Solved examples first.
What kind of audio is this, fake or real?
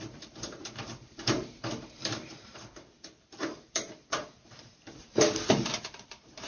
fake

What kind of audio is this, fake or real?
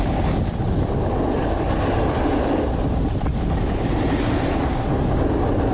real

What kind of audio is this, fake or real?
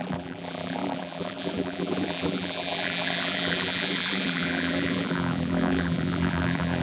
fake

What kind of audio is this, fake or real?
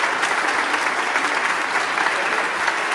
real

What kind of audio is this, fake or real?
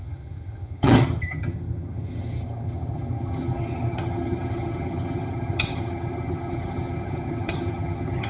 fake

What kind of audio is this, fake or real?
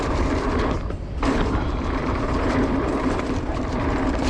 fake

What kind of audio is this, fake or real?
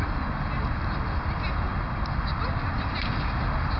real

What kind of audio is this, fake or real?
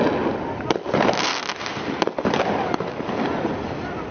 real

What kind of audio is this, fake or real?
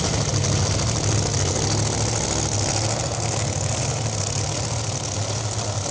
real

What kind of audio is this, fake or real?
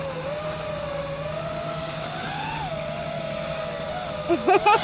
real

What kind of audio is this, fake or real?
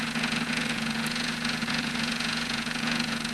fake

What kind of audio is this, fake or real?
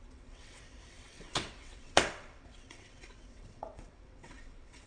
fake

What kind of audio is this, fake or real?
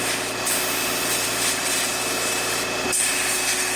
real